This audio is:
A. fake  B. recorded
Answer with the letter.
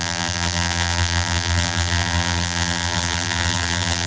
A